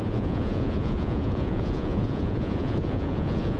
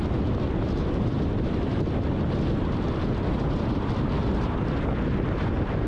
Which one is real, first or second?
second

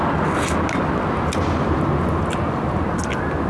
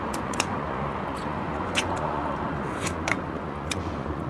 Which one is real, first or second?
first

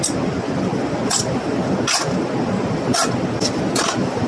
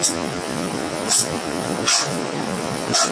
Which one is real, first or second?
first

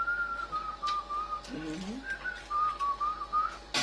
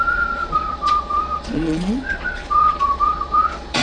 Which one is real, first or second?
first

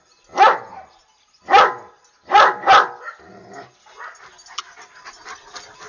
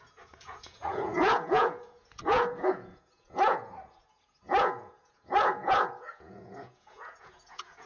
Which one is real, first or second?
first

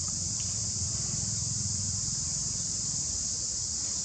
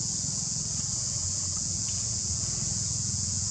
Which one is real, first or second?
first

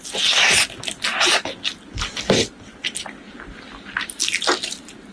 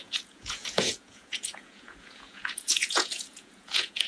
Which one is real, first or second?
first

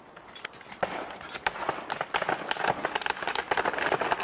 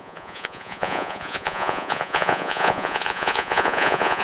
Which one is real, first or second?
first